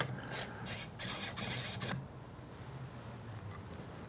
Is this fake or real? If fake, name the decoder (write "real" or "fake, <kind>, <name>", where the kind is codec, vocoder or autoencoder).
real